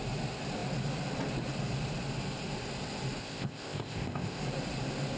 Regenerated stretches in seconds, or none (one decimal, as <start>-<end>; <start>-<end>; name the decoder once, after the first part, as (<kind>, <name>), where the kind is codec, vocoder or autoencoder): 3.2-4.4 (codec, ZipCodec)